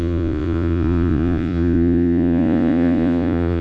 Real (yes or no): no